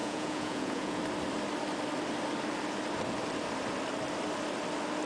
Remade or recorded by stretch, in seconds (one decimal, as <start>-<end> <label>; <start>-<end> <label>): 0.0-1.0 remade; 1.0-5.1 recorded